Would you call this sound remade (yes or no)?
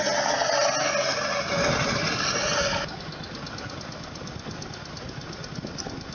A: no